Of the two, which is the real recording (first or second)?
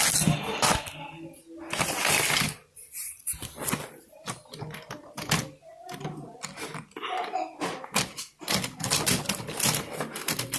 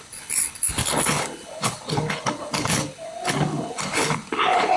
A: first